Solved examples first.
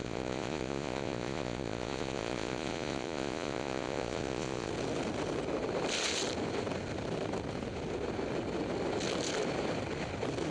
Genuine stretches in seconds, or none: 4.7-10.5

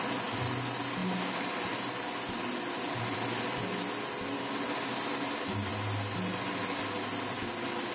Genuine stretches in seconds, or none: 0.0-7.9

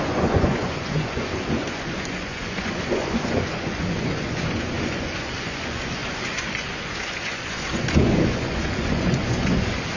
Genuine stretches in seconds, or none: none

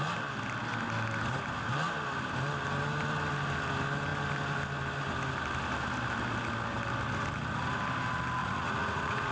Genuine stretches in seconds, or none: 0.0-8.4

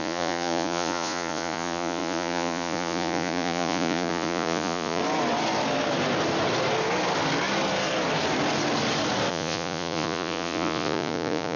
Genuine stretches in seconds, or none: 5.0-9.3